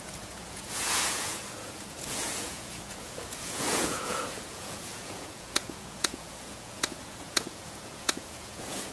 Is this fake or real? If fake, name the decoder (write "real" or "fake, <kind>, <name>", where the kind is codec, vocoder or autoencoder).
fake, vocoder, Vocos